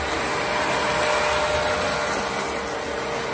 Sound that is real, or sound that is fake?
real